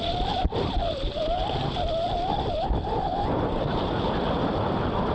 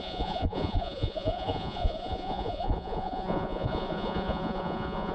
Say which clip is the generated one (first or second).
second